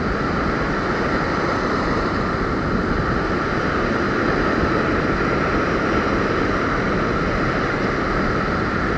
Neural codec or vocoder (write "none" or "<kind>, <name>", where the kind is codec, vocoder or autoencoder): none